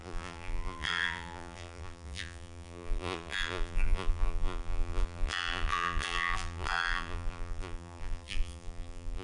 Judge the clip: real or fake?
fake